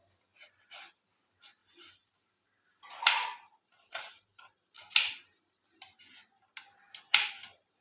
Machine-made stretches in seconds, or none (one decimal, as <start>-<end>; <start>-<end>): 1.6-4.8